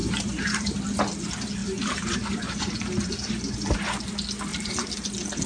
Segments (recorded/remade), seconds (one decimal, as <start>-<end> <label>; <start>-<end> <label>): 0.0-1.0 remade; 1.0-4.5 recorded; 4.5-5.1 remade; 5.1-5.5 recorded